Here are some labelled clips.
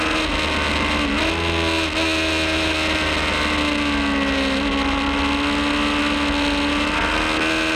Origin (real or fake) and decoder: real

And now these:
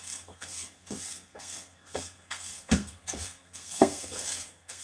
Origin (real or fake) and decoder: fake, codec, SNAC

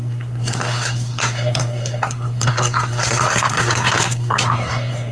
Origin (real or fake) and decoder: fake, codec, SNAC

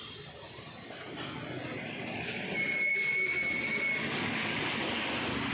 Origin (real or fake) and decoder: real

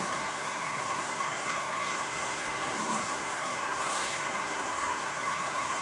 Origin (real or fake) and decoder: fake, codec, SNAC